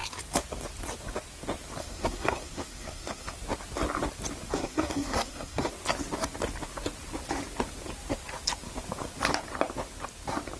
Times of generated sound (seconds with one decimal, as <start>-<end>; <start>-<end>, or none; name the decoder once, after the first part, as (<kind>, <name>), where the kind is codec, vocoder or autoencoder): 1.8-3.3 (codec, SNAC); 4.5-5.7